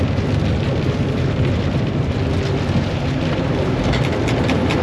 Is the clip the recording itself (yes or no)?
yes